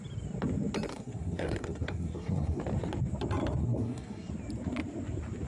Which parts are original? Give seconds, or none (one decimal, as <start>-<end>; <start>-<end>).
0.0-0.9; 2.6-3.6; 4.3-5.5